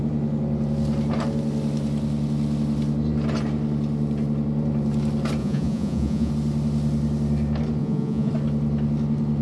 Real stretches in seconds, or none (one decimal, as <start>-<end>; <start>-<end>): 0.0-5.4; 6.3-7.8; 8.3-9.4